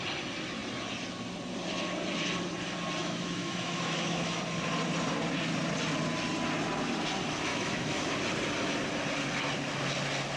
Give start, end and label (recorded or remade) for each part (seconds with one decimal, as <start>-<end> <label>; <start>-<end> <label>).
0.0-3.0 recorded; 3.0-4.4 remade; 4.4-7.5 recorded; 7.5-8.1 remade; 8.1-10.4 recorded